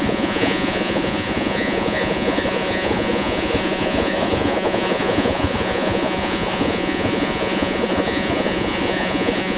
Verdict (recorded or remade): remade